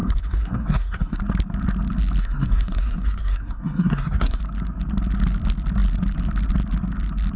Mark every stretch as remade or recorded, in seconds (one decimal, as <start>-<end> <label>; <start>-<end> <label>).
0.0-1.2 remade; 1.2-2.2 recorded; 2.2-4.4 remade; 4.4-7.4 recorded